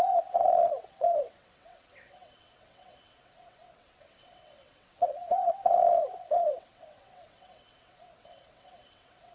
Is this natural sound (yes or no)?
no